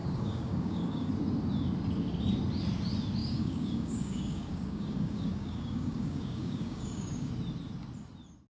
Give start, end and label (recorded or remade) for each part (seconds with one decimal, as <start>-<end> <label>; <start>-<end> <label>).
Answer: 0.0-1.1 remade; 1.1-3.2 recorded; 3.2-7.3 remade; 7.3-8.5 recorded